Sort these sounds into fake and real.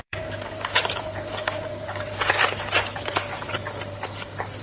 fake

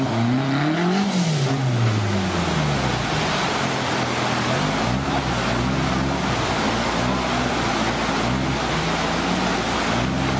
real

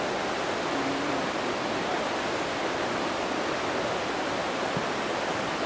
real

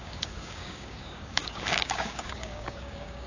fake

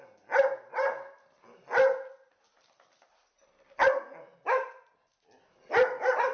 real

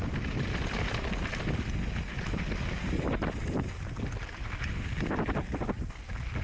real